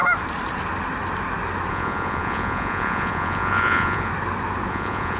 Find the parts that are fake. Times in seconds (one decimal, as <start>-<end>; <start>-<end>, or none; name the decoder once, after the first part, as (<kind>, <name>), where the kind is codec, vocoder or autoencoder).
1.7-4.1 (vocoder, Vocos); 4.7-5.2